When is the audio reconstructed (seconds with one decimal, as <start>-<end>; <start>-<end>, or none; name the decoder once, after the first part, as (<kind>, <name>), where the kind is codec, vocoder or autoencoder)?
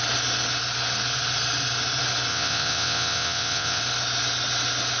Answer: 2.3-3.8 (vocoder, WaveNeXt)